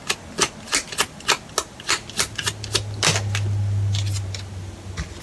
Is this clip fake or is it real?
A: real